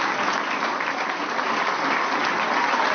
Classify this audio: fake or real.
real